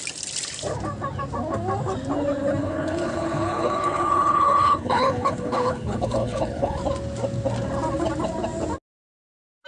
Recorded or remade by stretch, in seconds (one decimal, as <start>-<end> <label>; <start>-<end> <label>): 0.0-2.6 recorded; 2.6-6.8 remade; 6.8-9.7 recorded

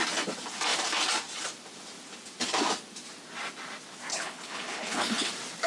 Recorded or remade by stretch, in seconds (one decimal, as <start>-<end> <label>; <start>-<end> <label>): 0.0-4.1 recorded; 4.1-5.3 remade; 5.3-5.7 recorded

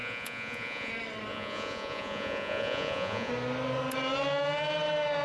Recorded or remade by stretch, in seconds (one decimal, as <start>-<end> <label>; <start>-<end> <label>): 0.0-0.9 remade; 0.9-1.3 recorded; 1.3-3.3 remade; 3.3-5.2 recorded

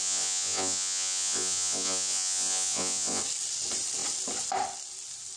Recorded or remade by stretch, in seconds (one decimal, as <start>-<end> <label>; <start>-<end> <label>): 0.0-3.2 remade; 3.2-5.4 recorded

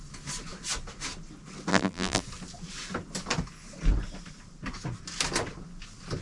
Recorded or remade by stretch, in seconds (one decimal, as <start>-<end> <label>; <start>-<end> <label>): 0.0-1.7 recorded; 1.7-2.2 remade; 2.2-6.2 recorded

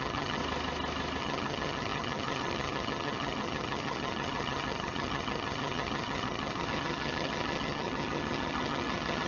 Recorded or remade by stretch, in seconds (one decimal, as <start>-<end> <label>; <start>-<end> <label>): 0.0-0.4 remade; 0.4-1.2 recorded; 1.2-9.3 remade